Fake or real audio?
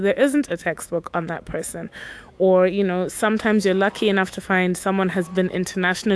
fake